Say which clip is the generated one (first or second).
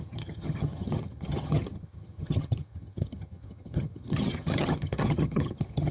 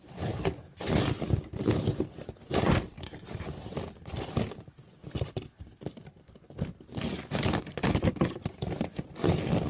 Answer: first